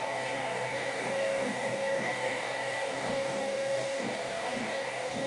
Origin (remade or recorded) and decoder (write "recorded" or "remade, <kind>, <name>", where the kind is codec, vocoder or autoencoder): remade, codec, DAC